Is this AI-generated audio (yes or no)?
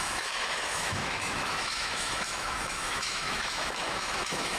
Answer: yes